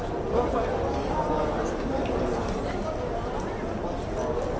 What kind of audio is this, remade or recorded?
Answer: recorded